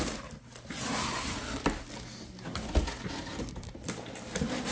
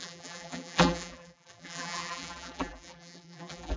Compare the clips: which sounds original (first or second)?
first